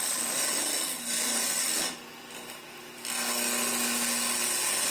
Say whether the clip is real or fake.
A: real